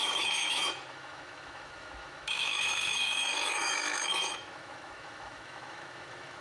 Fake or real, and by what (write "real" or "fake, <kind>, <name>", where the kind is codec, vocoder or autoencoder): fake, autoencoder, DAC-VAE